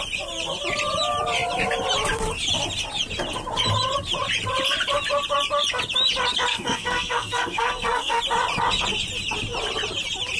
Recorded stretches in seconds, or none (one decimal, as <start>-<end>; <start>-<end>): 0.0-6.5; 8.2-10.4